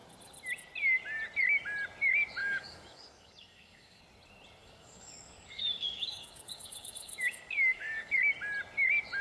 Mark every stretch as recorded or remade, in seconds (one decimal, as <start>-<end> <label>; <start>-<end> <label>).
0.0-2.4 recorded; 2.4-4.0 remade; 4.0-4.6 recorded; 4.6-8.2 remade; 8.2-9.2 recorded